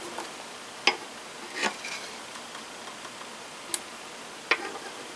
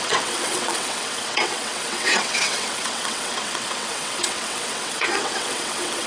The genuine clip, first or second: first